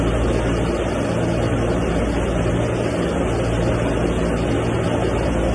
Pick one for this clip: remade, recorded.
recorded